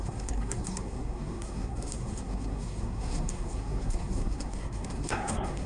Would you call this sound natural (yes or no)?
no